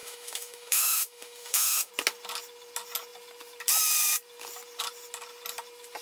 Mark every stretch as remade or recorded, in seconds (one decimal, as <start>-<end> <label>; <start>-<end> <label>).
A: 0.0-1.9 remade; 1.9-6.0 recorded

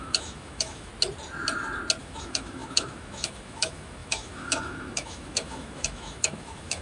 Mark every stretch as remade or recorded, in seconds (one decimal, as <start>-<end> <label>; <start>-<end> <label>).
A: 0.0-0.9 remade; 0.9-2.0 recorded; 2.0-6.8 remade